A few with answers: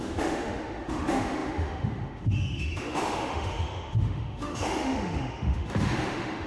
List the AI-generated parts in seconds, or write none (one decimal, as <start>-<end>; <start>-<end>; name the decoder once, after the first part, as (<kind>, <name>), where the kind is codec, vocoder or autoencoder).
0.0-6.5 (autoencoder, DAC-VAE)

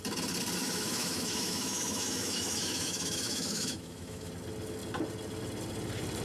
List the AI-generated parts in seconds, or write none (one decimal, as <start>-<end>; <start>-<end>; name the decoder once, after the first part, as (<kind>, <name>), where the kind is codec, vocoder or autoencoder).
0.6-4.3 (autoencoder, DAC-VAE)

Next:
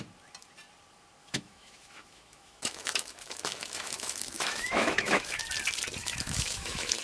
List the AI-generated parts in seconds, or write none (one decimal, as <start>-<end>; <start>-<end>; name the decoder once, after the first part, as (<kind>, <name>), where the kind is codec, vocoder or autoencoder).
1.2-5.4 (autoencoder, DAC-VAE); 6.0-7.0